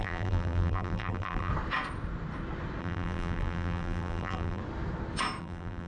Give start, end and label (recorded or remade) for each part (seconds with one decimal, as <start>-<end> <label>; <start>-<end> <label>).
0.0-1.5 remade; 1.5-2.8 recorded; 2.8-4.6 remade; 4.6-5.4 recorded; 5.4-5.9 remade